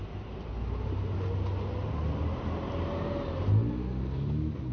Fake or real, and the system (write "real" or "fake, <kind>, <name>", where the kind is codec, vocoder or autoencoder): real